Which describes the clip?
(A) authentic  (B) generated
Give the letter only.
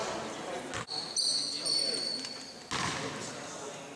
A